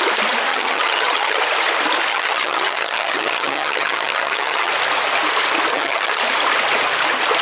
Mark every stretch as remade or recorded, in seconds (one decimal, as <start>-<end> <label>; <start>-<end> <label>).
0.0-0.5 recorded; 0.5-1.4 remade; 1.4-2.1 recorded; 2.1-4.7 remade; 4.7-5.7 recorded; 5.7-6.2 remade; 6.2-7.4 recorded